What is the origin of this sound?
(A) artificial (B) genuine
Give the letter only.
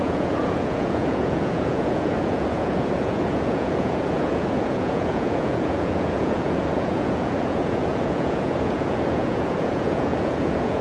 A